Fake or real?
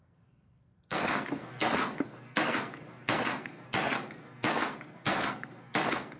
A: fake